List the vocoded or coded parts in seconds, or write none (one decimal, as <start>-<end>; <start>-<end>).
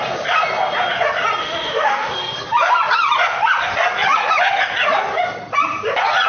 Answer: 1.4-2.1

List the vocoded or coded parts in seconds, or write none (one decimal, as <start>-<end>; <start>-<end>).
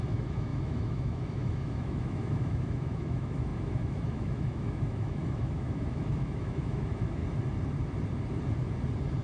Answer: 0.0-7.2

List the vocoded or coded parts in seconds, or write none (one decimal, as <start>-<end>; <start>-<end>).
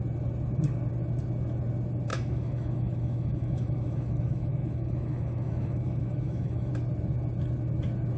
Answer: 2.1-6.7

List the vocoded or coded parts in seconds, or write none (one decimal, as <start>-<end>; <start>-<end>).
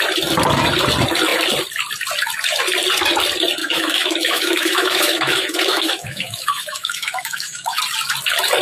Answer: 3.6-7.8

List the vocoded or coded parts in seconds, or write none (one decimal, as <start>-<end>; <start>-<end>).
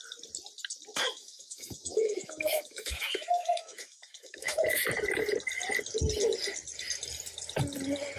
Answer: 0.9-4.8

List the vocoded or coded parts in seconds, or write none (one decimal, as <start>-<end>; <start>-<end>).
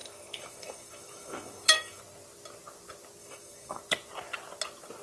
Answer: 0.0-2.0; 3.2-3.8